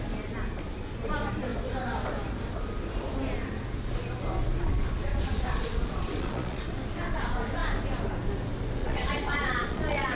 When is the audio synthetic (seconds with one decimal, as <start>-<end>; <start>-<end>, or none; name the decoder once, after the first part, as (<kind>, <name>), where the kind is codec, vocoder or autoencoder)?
5.1-6.6 (vocoder, Vocos); 8.8-10.2